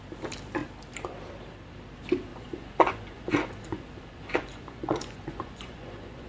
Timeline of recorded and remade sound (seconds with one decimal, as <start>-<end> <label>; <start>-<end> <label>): 0.0-2.3 recorded; 2.3-6.3 remade